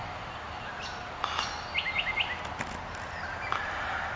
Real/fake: real